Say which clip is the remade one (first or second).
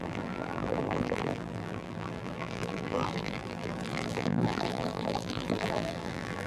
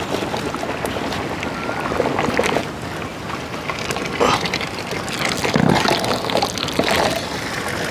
first